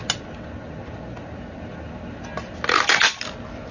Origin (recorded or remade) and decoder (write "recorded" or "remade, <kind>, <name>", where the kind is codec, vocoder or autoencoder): recorded